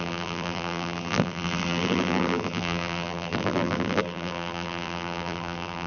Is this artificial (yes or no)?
yes